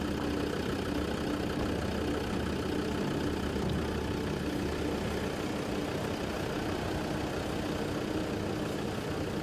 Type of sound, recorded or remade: recorded